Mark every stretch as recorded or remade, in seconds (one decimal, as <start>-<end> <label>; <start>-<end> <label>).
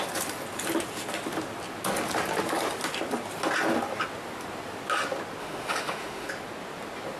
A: 0.0-5.4 recorded; 5.4-6.3 remade; 6.3-7.2 recorded